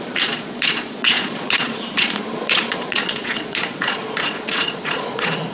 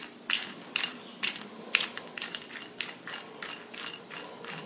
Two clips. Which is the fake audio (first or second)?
first